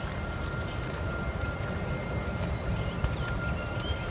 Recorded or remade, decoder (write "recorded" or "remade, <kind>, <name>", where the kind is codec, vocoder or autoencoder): recorded